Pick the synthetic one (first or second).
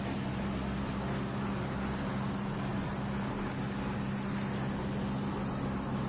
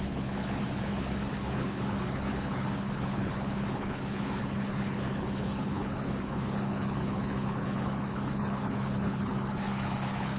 second